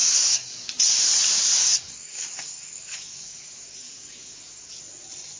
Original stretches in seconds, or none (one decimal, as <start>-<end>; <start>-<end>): 0.9-1.6; 4.8-5.4